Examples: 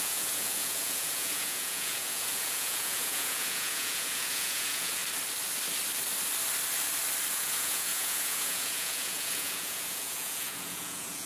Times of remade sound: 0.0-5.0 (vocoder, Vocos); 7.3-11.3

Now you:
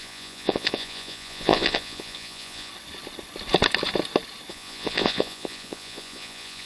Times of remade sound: 0.0-2.7 (vocoder, Vocos); 4.5-6.7

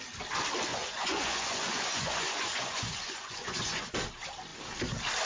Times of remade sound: 0.7-3.9 (vocoder, Vocos)